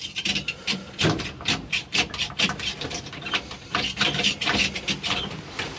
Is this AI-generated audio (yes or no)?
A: yes